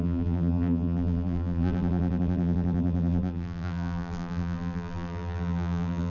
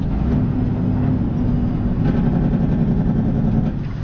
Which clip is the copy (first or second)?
first